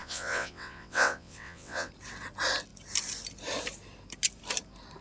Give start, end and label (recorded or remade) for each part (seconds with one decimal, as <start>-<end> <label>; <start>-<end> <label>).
0.0-1.9 remade; 1.9-5.0 recorded